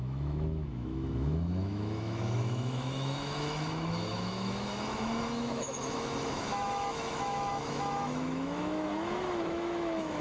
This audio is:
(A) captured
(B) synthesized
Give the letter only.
B